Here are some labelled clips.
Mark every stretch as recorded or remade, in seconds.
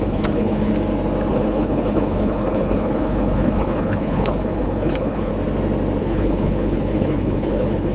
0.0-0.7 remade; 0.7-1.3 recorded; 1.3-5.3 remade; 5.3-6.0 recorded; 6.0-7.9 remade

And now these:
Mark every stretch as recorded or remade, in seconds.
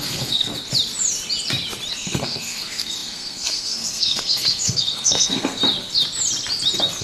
0.0-0.5 remade; 0.5-1.9 recorded; 1.9-5.6 remade; 5.6-7.0 recorded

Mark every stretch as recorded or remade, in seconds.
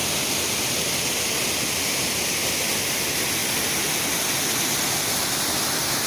0.0-0.9 remade; 0.9-3.4 recorded; 3.4-4.0 remade; 4.0-6.1 recorded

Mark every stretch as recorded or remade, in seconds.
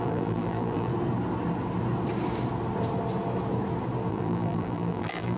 0.0-0.9 remade; 0.9-4.1 recorded; 4.1-5.4 remade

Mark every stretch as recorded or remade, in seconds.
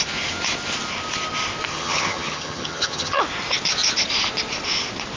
0.0-1.7 recorded; 1.7-3.2 remade; 3.2-5.2 recorded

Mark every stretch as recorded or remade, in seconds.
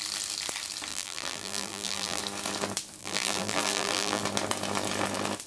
0.0-0.9 recorded; 0.9-2.2 remade; 2.2-3.0 recorded; 3.0-4.2 remade; 4.2-5.5 recorded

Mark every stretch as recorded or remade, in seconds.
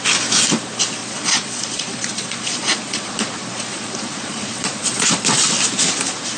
0.0-1.0 recorded; 1.0-3.1 remade; 3.1-3.5 recorded; 3.5-5.2 remade; 5.2-6.4 recorded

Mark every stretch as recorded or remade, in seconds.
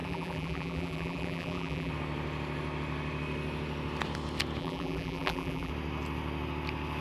0.0-1.9 remade; 1.9-4.6 recorded; 4.6-5.7 remade; 5.7-7.0 recorded